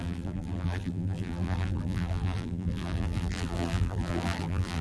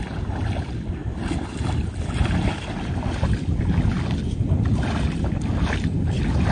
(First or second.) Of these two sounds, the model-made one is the first